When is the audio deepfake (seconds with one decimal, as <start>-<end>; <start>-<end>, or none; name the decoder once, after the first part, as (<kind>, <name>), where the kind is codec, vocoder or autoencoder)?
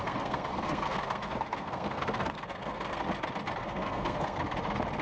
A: 0.0-3.0 (codec, SNAC); 3.6-4.4